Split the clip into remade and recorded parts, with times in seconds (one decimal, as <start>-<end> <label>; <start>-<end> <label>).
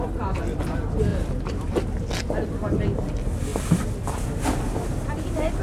0.0-1.1 recorded; 1.1-2.1 remade; 2.1-5.6 recorded